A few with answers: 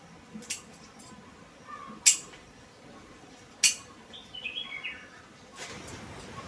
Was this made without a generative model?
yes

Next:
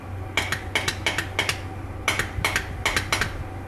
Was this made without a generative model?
yes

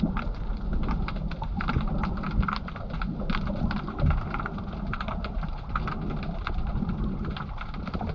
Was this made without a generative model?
yes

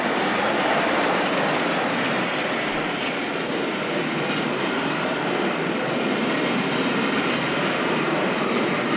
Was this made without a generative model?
yes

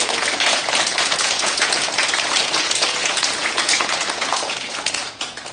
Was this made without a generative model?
no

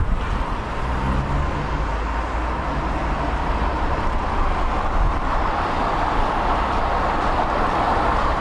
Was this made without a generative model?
yes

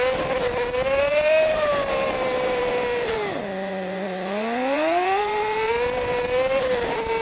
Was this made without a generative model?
no